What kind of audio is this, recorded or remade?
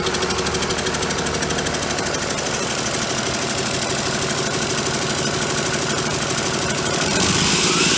recorded